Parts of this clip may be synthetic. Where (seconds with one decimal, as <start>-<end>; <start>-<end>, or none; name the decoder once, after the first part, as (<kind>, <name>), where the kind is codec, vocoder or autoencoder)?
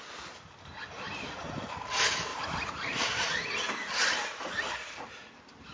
2.3-5.0 (vocoder, BigVGAN v2)